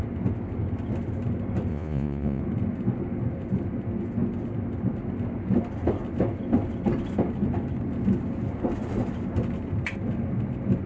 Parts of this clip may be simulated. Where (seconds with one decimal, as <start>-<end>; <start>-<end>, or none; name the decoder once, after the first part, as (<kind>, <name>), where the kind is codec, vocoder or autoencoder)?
1.7-2.4 (vocoder, Vocos)